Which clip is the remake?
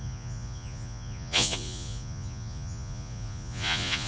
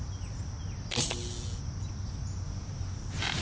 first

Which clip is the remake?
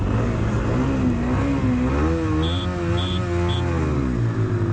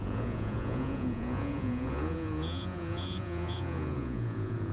second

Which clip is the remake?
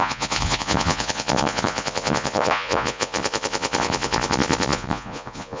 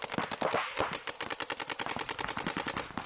first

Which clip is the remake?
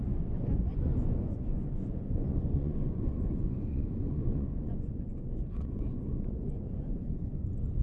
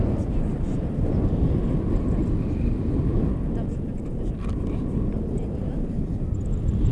first